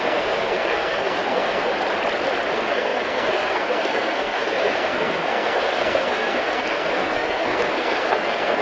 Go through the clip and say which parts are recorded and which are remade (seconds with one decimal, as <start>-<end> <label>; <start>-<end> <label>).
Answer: 0.0-1.7 remade; 1.7-2.5 recorded; 2.5-8.6 remade